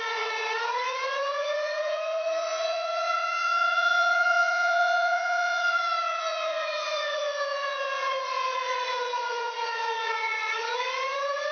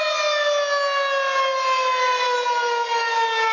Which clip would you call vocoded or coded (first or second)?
first